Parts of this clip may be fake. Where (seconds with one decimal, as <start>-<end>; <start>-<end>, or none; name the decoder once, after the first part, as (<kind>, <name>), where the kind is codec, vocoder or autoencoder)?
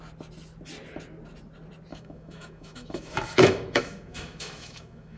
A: 1.9-5.2 (autoencoder, DAC-VAE)